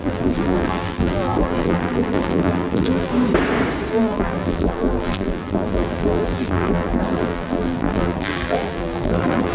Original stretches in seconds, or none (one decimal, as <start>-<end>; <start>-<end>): 3.1-3.9